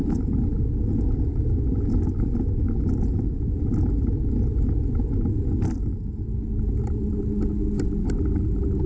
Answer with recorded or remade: recorded